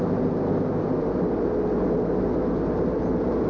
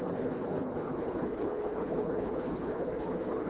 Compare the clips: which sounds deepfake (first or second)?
second